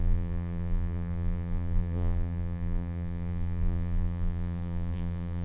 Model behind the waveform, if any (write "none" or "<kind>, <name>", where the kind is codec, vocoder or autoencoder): vocoder, BigVGAN v2